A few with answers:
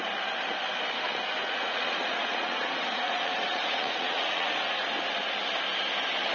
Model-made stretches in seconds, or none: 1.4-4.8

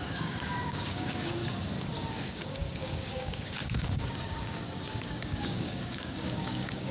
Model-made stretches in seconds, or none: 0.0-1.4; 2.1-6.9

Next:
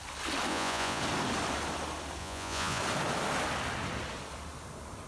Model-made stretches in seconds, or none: 0.5-1.0; 2.2-2.8

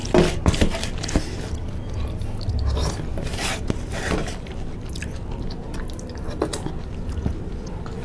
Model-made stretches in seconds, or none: 4.2-5.5

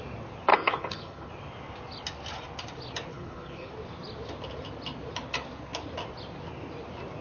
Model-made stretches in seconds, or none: 0.5-1.3; 3.1-3.7

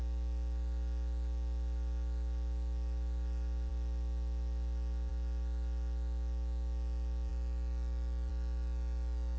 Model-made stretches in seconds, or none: none

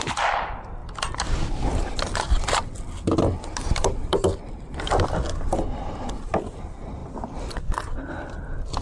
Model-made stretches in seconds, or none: 0.8-1.8